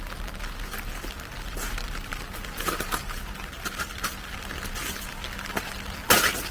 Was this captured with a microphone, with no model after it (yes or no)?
yes